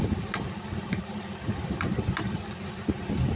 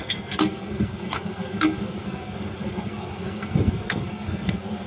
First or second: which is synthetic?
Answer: second